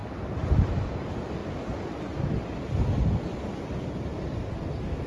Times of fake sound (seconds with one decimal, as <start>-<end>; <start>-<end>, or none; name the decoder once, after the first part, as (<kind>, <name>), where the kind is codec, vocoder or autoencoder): none